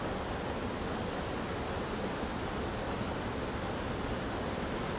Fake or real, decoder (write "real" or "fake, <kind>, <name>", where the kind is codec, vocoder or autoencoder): real